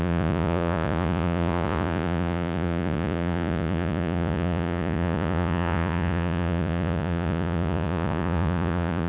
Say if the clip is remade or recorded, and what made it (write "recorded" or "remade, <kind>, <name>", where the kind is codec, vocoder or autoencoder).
remade, vocoder, Vocos